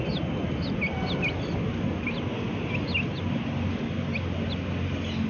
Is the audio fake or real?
real